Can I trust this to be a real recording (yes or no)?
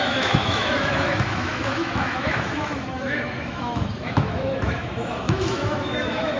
no